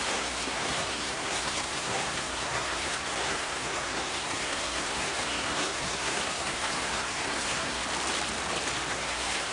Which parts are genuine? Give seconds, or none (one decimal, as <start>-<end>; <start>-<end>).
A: 7.8-8.9